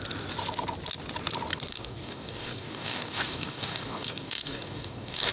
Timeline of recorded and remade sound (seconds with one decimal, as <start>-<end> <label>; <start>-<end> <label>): 0.0-1.7 recorded; 1.7-5.3 remade